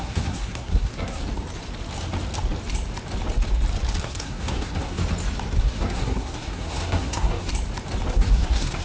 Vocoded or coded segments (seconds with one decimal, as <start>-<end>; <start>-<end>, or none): 0.0-1.2; 4.0-5.0; 5.6-7.5; 8.1-8.8